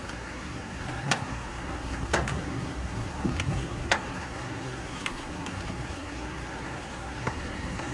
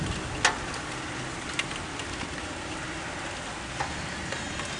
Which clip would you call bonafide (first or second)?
second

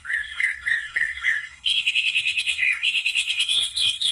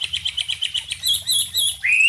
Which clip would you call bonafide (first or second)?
second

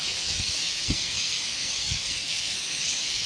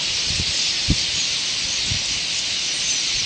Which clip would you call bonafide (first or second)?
second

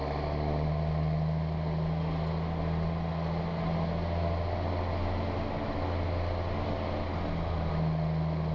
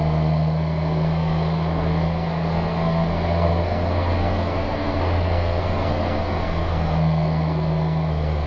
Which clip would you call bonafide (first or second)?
first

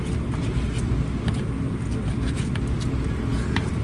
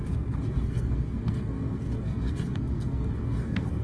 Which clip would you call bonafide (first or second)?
first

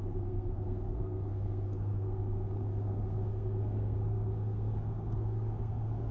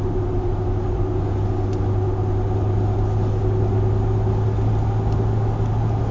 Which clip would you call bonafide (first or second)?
second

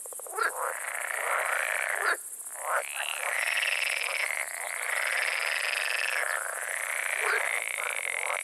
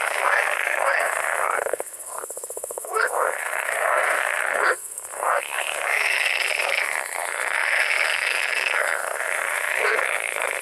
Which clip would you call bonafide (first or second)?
first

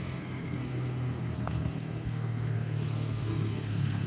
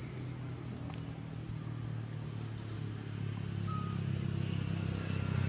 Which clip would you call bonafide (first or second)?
second